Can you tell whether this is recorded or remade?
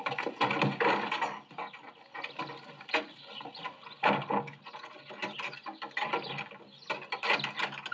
recorded